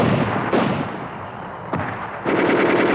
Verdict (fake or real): real